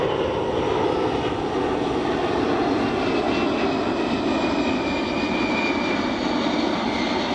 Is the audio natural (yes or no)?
yes